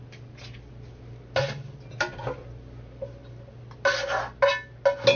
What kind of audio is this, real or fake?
real